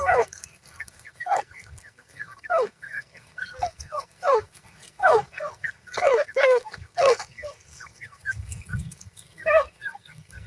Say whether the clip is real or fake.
fake